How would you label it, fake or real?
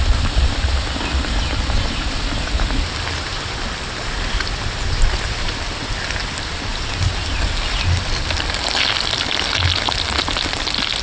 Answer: real